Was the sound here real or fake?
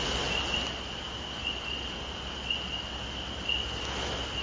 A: real